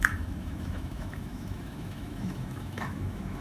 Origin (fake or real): fake